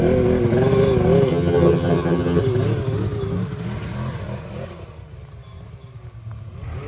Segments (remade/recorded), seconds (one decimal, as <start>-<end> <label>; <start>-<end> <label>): 0.0-1.3 recorded; 1.3-2.4 remade; 2.4-6.9 recorded